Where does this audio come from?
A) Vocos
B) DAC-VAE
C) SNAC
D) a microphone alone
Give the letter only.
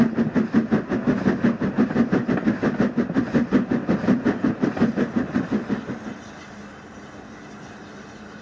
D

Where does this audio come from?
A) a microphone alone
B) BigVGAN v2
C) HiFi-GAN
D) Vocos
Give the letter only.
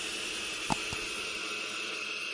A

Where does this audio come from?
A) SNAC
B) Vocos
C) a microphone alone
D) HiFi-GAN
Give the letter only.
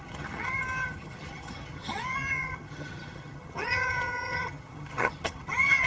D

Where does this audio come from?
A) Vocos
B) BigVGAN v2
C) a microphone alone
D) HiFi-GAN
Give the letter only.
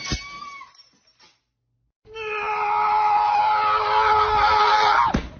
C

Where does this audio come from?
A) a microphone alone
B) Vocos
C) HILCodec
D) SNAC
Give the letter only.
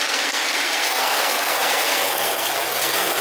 D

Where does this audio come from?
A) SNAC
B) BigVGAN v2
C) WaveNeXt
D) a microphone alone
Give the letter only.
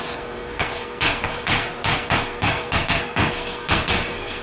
A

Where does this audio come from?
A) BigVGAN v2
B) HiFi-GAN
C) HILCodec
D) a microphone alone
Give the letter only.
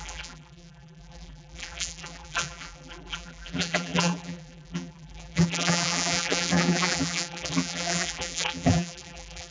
A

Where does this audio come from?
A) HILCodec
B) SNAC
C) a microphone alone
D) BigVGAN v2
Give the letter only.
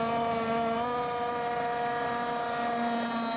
C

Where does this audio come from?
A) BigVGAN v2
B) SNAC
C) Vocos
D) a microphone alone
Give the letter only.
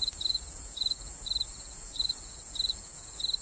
C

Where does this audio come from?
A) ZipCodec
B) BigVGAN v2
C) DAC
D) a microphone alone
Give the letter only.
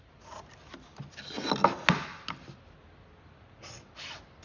D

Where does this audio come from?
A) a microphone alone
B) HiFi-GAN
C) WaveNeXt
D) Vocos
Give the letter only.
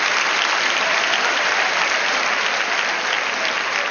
A